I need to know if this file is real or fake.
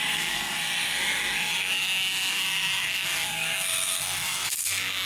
fake